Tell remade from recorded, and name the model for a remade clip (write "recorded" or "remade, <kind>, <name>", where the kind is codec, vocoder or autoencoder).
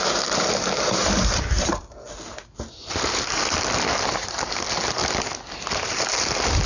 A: recorded